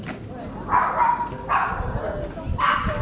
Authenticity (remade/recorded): recorded